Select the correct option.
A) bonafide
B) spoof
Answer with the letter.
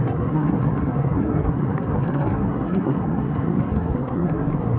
B